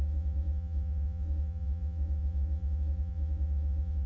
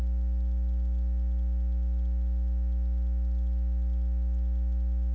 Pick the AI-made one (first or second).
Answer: first